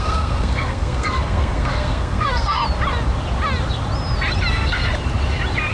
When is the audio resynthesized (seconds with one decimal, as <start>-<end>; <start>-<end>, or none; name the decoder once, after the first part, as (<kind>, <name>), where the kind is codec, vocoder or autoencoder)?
0.0-2.6 (codec, SNAC); 4.5-4.9